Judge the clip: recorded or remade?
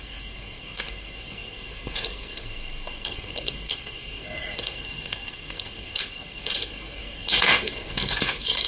remade